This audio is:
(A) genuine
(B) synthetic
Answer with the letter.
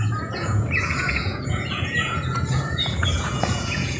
B